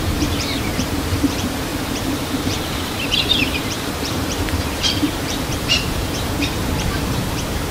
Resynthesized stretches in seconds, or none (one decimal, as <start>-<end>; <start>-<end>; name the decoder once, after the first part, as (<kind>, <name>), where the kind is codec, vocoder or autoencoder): 0.0-1.7 (vocoder, BigVGAN v2); 2.3-7.7